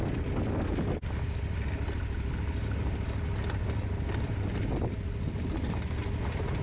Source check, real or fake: real